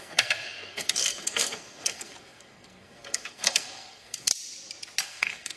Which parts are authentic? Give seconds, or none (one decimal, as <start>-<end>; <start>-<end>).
4.3-5.0